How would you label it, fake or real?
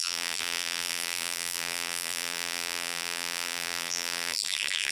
fake